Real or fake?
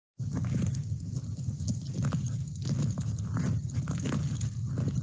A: real